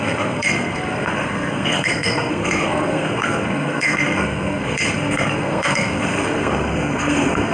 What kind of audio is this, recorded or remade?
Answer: remade